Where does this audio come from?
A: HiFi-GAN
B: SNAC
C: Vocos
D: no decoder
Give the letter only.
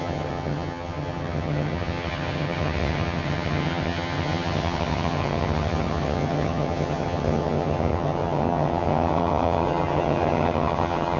A